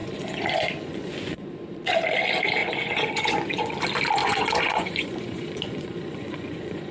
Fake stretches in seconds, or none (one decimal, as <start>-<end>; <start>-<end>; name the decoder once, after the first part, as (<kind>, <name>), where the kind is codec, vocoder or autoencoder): 0.0-1.5 (vocoder, Vocos); 2.6-3.7; 4.2-6.9

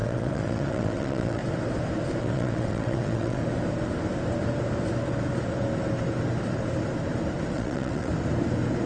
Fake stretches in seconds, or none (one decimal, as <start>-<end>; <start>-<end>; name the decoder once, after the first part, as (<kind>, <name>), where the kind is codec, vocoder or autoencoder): 0.0-1.4 (vocoder, WaveNeXt); 2.2-3.4; 7.5-8.1

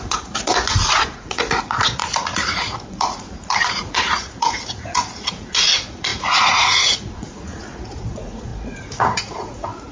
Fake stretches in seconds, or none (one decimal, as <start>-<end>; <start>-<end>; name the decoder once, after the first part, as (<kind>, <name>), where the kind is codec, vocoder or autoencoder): 0.0-9.9 (vocoder, Vocos)

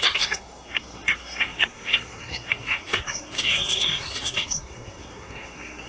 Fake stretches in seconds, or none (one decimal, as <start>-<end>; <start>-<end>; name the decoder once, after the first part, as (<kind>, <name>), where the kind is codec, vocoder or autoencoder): 0.0-5.9 (codec, SNAC)

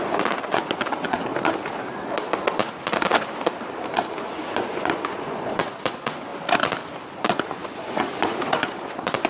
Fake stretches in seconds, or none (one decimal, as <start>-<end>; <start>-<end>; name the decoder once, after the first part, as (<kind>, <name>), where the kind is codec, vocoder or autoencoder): 0.0-1.3 (vocoder, Vocos); 4.2-6.3; 7.1-9.3

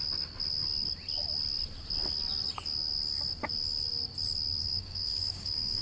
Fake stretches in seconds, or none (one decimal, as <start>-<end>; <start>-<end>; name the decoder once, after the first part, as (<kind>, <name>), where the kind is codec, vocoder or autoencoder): 4.6-5.8 (codec, DAC)

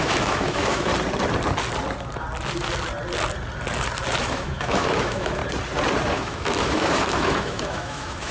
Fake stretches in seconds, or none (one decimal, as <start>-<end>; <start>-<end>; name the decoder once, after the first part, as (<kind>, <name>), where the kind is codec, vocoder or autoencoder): 0.0-0.9 (autoencoder, DAC-VAE); 4.2-5.4; 6.1-8.3

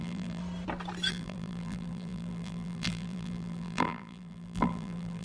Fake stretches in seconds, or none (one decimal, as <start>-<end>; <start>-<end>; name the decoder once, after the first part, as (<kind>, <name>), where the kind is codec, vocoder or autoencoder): 0.0-0.4 (vocoder, BigVGAN v2); 1.1-5.2